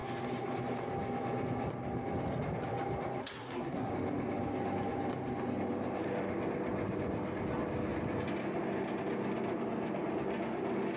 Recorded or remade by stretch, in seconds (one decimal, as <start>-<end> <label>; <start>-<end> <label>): 0.0-3.2 recorded; 3.2-3.9 remade; 3.9-11.0 recorded